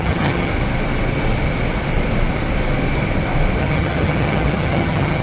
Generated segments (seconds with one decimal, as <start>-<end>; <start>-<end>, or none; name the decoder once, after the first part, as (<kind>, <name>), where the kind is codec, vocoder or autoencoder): 0.0-0.5 (vocoder, HiFi-GAN); 3.6-5.2